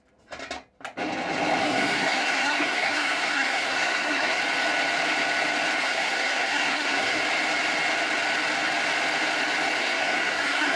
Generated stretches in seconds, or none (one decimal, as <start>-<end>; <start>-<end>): 1.6-4.4; 5.8-7.2; 9.8-10.8